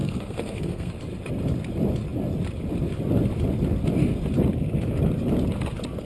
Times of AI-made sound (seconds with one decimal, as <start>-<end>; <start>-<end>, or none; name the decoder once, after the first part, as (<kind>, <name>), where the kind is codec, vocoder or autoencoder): 0.0-0.9 (codec, SNAC)